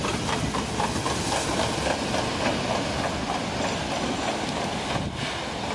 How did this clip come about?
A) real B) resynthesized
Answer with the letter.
A